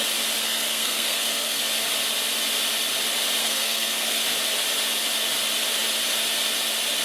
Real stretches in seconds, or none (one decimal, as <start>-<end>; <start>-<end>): 0.0-0.4; 1.6-3.4; 4.2-7.0